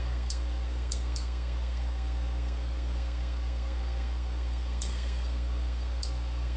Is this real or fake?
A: fake